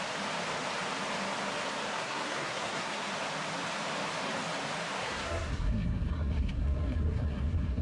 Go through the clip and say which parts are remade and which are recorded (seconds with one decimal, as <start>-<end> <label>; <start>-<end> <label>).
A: 0.0-1.9 recorded; 1.9-3.1 remade; 3.1-5.0 recorded; 5.0-7.8 remade